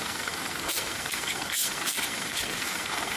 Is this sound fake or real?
fake